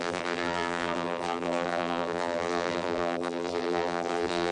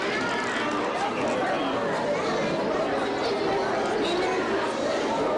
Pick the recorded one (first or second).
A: second